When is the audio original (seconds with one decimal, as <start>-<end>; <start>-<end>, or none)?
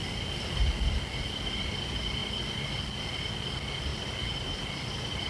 0.6-2.2; 2.8-3.9; 4.6-5.3